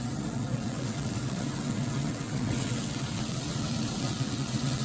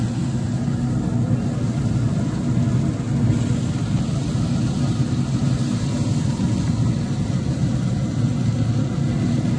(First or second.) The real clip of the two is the second